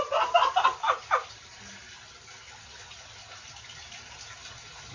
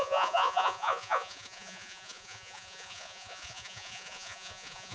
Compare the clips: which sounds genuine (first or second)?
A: first